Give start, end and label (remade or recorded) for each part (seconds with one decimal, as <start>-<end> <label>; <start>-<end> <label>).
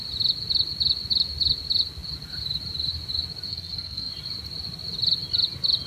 0.0-3.5 recorded; 3.5-4.1 remade; 4.1-5.9 recorded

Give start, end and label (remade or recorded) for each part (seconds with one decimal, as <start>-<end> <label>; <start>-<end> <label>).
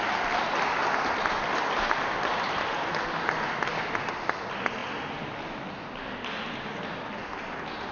0.0-7.9 recorded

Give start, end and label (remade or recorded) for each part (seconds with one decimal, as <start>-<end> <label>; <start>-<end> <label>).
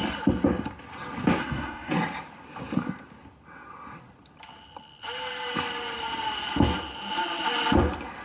0.0-1.4 recorded; 1.4-1.9 remade; 1.9-8.2 recorded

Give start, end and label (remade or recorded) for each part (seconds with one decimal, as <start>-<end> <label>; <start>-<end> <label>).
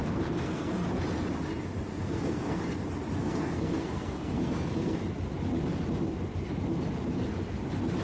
0.0-0.7 remade; 0.7-1.9 recorded; 1.9-2.6 remade; 2.6-3.2 recorded; 3.2-5.0 remade; 5.0-8.0 recorded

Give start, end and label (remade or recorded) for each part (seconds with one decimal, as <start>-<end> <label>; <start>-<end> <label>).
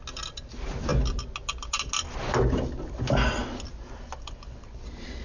0.0-5.2 recorded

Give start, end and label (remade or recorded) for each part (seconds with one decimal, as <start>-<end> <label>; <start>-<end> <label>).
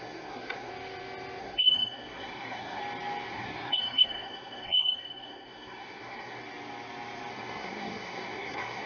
0.0-0.7 remade; 0.7-1.4 recorded; 1.4-2.8 remade; 2.8-3.3 recorded; 3.3-6.4 remade; 6.4-7.3 recorded; 7.3-8.9 remade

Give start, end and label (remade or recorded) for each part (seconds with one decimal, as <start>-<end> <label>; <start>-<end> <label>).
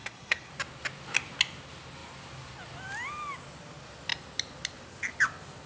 0.0-0.5 remade; 0.5-5.7 recorded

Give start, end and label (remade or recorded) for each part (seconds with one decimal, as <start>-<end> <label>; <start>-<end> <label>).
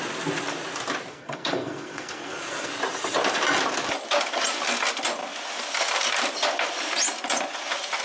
0.0-1.1 recorded; 1.1-2.7 remade; 2.7-8.0 recorded